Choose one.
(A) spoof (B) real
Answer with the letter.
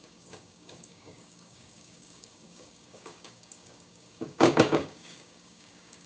A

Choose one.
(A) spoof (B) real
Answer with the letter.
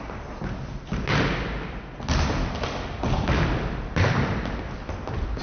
B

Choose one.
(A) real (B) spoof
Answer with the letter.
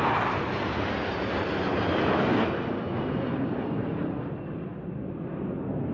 A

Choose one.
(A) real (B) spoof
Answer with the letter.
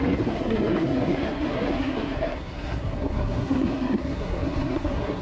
B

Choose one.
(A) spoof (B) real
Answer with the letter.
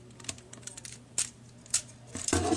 B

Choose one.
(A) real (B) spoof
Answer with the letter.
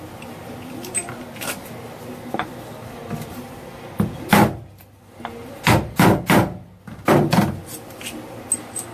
A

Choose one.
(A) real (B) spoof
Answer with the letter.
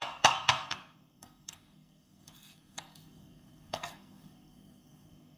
B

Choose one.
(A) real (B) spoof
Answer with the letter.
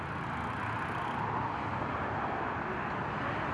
A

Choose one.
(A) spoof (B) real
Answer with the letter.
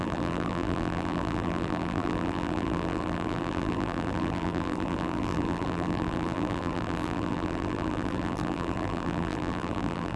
A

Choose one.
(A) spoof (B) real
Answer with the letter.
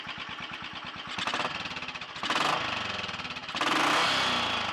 B